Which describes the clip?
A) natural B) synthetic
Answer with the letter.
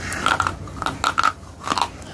A